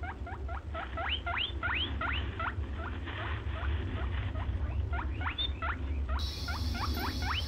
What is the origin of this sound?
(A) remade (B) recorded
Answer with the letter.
B